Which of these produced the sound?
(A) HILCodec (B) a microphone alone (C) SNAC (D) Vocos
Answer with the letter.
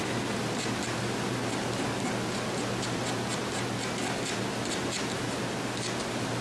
B